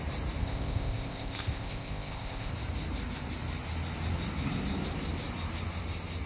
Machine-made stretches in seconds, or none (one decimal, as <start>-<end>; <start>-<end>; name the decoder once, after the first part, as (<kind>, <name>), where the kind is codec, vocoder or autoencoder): 0.4-2.5 (codec, ZipCodec)